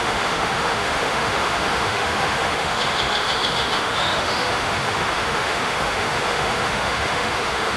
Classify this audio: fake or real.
fake